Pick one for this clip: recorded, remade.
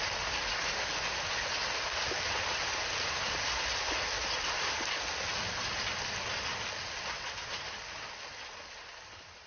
recorded